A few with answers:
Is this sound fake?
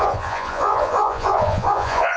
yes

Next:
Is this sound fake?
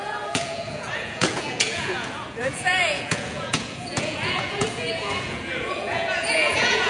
yes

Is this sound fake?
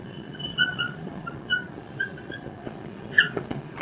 yes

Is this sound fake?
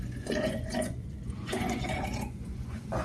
yes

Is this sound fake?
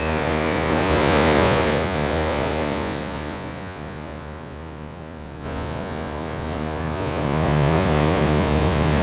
yes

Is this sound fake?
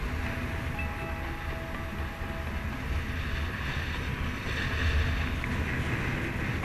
no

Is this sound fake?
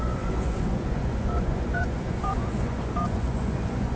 yes